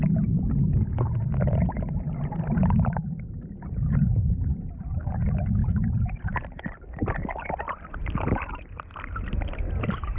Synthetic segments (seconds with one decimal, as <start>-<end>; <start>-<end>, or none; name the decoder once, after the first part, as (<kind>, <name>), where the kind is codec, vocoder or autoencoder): none